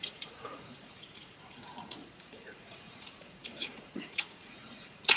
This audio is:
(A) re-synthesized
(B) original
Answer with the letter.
A